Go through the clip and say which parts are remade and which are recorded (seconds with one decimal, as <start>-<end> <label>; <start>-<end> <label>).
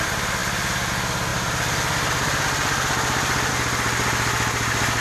0.0-0.4 recorded; 0.4-0.9 remade; 0.9-1.3 recorded; 1.3-3.5 remade; 3.5-5.0 recorded